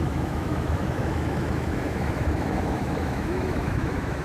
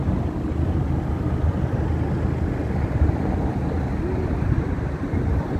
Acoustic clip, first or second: second